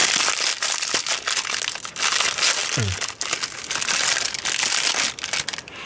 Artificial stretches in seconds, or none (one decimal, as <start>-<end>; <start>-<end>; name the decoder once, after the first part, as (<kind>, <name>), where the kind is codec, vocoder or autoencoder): none